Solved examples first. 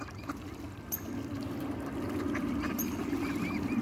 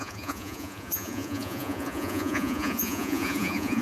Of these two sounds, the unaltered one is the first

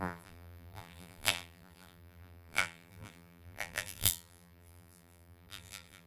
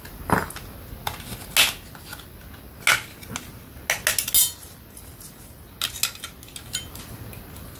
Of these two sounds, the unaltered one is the second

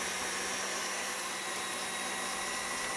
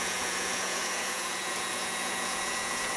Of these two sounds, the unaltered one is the first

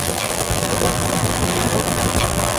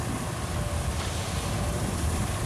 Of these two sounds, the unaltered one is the second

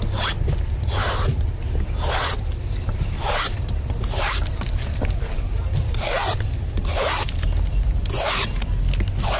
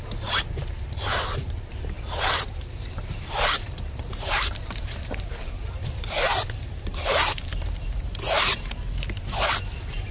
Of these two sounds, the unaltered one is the first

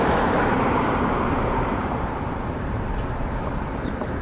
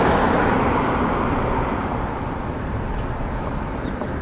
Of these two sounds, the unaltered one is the second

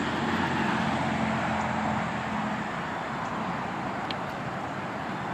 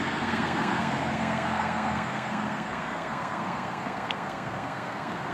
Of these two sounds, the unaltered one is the first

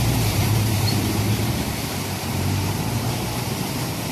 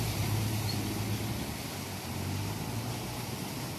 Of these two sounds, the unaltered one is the second